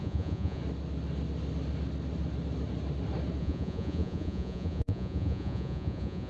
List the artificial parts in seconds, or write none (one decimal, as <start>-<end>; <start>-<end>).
0.0-0.6; 3.4-6.3